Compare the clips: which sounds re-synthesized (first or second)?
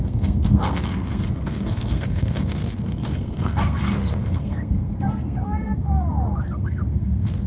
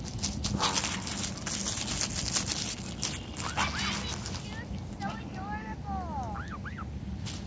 first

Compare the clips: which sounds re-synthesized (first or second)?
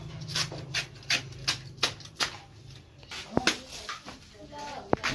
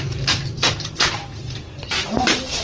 second